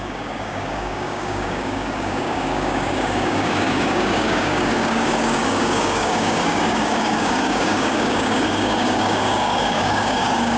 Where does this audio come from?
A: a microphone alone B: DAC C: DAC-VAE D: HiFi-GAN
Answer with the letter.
B